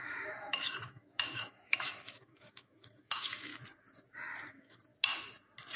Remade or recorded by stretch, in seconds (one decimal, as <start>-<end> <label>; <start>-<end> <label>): 0.0-3.5 remade; 3.5-4.5 recorded; 4.5-4.9 remade; 4.9-5.8 recorded